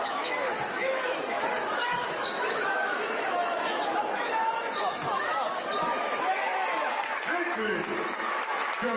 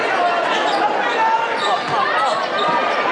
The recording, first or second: second